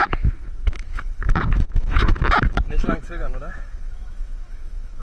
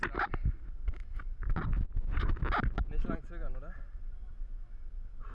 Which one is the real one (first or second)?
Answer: second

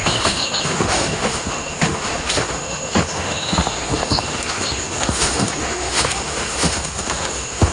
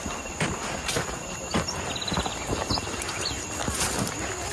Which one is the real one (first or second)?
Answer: second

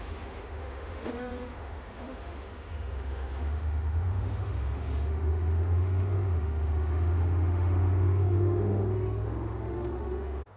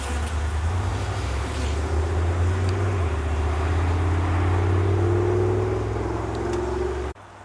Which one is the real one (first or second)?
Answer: second